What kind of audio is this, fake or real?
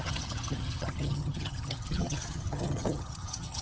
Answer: fake